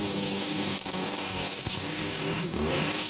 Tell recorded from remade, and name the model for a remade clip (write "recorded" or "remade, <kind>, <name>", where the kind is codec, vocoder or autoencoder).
remade, codec, DAC